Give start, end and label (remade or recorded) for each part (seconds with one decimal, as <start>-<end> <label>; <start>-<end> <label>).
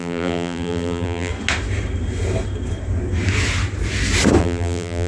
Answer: 0.0-1.3 remade; 1.3-4.4 recorded; 4.4-5.1 remade